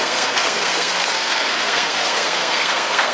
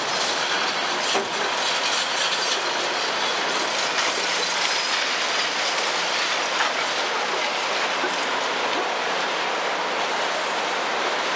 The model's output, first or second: first